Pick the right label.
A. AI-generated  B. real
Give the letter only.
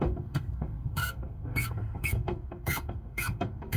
A